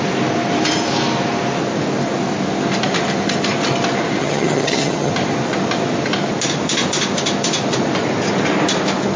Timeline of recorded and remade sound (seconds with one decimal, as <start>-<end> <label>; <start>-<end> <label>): 0.0-4.2 recorded; 4.2-5.1 remade; 5.1-9.2 recorded